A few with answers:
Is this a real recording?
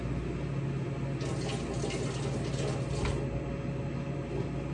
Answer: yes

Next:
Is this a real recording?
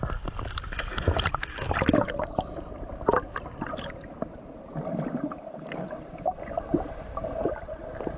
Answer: yes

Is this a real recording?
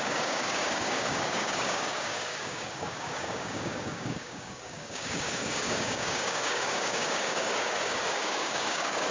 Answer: no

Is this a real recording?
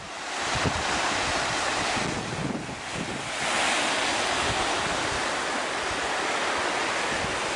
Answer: yes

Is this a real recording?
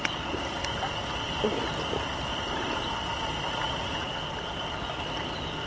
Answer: yes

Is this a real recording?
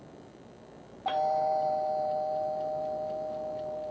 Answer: yes